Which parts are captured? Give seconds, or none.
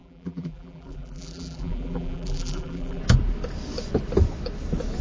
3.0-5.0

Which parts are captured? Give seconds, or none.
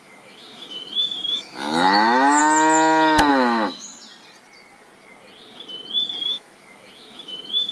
2.4-3.3; 3.9-6.2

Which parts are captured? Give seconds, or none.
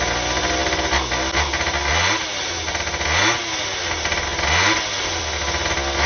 0.0-6.1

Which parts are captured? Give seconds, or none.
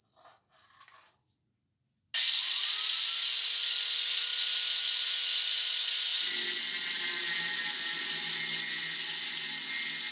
0.0-10.1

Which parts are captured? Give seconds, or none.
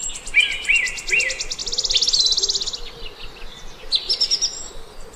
0.0-5.2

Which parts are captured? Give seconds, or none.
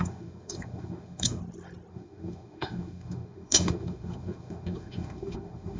1.4-1.9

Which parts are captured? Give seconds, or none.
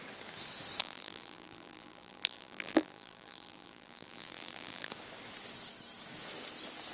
0.0-0.8; 4.9-6.9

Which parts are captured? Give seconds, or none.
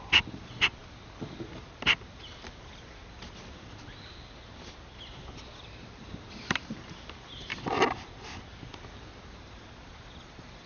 0.0-10.7